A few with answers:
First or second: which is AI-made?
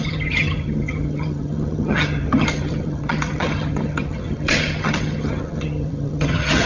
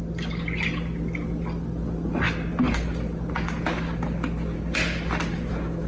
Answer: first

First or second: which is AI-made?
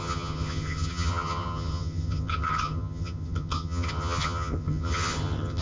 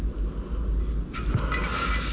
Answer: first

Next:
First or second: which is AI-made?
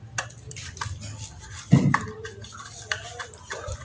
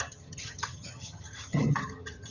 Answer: second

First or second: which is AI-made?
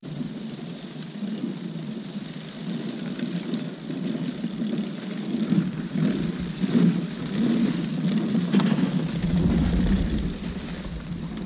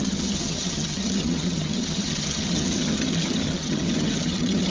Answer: second